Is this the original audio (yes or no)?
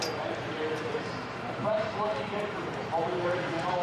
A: no